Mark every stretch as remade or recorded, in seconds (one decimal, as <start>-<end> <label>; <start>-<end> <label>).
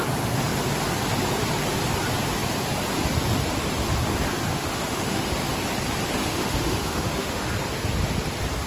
0.0-4.5 recorded; 4.5-5.3 remade; 5.3-6.2 recorded; 6.2-7.5 remade; 7.5-8.7 recorded